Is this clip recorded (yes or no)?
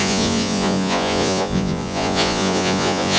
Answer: no